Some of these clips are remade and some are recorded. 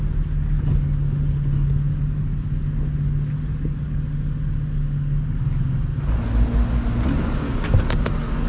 recorded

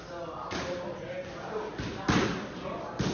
recorded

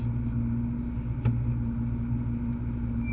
recorded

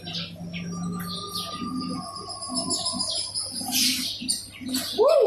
recorded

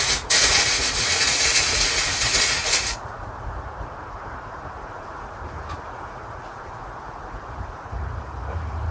remade